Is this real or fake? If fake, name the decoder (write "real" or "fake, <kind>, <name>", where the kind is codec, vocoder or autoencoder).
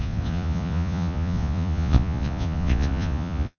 fake, vocoder, Vocos